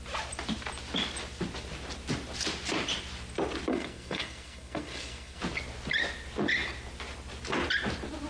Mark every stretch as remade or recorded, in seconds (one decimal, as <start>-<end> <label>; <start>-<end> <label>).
0.0-3.7 recorded; 3.7-5.4 remade; 5.4-8.3 recorded